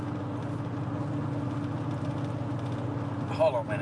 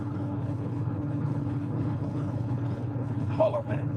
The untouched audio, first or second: first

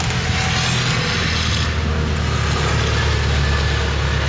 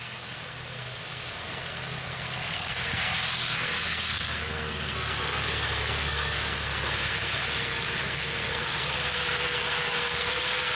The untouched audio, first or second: first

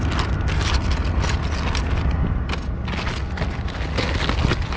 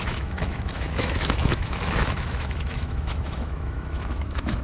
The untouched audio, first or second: first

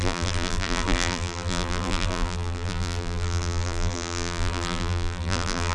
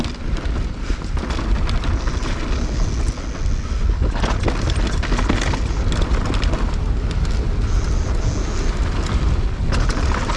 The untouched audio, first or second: second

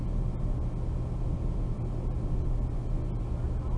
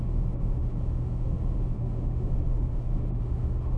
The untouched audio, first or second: first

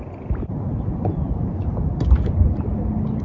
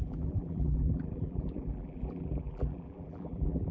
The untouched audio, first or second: first